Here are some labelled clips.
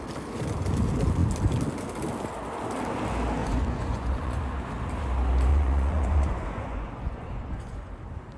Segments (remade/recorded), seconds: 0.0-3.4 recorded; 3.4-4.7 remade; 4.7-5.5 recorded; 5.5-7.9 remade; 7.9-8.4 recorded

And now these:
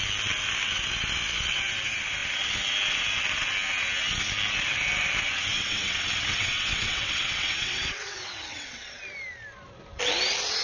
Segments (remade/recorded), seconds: 0.0-5.5 recorded; 5.5-9.0 remade; 9.0-10.6 recorded

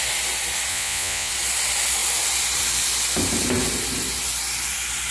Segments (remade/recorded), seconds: 0.0-0.7 recorded; 0.7-1.3 remade; 1.3-5.1 recorded

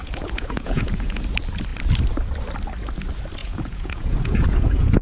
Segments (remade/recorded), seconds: 0.0-1.2 remade; 1.2-3.4 recorded; 3.4-5.0 remade

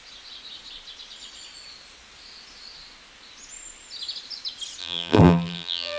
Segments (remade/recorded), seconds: 0.0-4.8 recorded; 4.8-6.0 remade

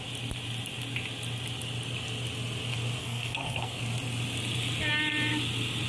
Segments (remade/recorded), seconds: 0.0-3.0 recorded; 3.0-3.8 remade; 3.8-5.9 recorded

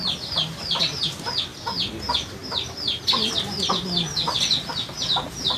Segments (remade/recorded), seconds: 0.0-5.6 recorded